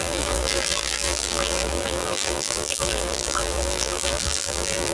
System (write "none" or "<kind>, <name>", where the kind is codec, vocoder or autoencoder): vocoder, BigVGAN v2